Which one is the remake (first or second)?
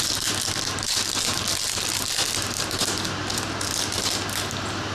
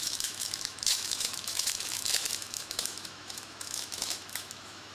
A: second